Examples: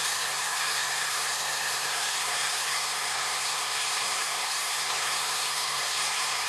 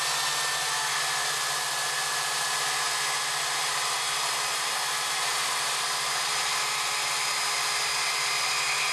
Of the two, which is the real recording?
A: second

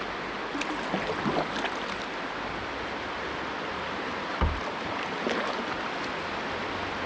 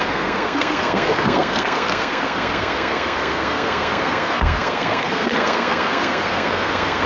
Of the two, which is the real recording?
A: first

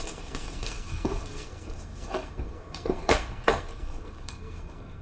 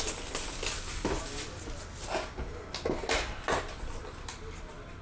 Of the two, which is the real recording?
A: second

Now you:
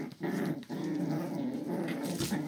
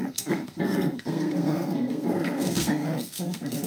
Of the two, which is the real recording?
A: first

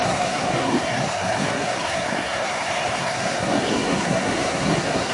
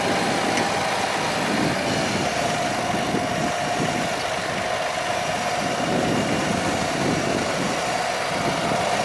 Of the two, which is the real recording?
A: second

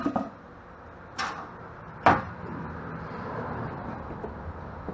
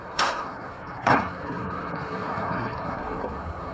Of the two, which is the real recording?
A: first